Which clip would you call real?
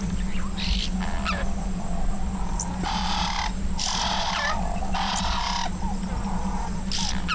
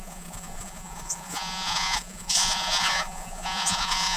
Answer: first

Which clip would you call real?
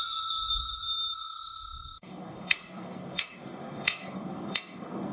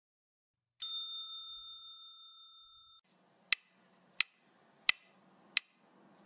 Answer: second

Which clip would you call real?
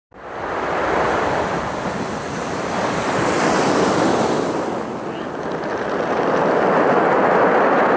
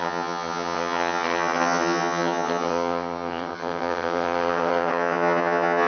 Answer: first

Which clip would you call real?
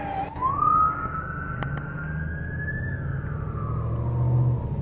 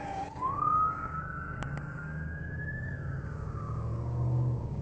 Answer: first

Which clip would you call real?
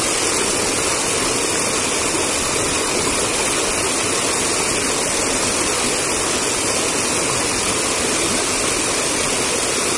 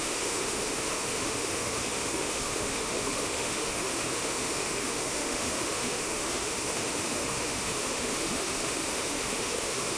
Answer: first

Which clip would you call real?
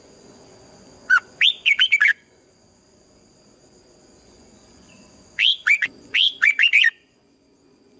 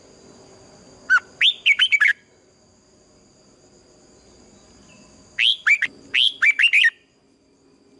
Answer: second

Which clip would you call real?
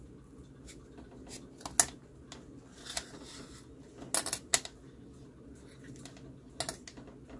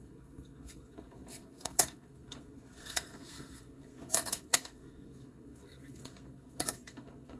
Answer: first